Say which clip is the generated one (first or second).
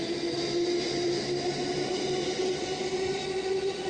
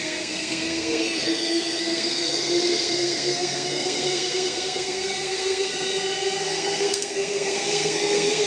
second